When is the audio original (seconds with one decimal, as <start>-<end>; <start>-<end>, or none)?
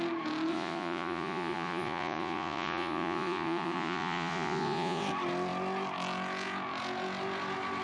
0.0-0.5; 5.0-7.8